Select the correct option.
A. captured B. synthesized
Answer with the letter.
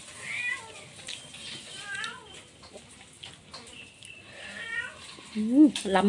A